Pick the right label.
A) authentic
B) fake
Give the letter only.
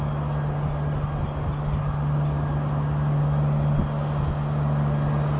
A